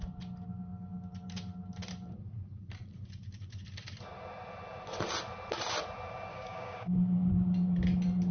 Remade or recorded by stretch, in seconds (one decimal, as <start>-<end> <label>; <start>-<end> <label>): 0.0-6.3 recorded; 6.3-7.3 remade; 7.3-8.3 recorded